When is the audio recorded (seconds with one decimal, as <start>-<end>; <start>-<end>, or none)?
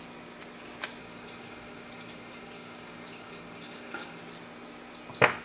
0.0-1.0; 4.2-5.4